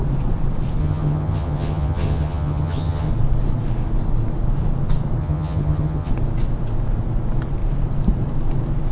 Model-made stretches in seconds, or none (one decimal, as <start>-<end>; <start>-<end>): 0.8-3.1; 5.2-6.1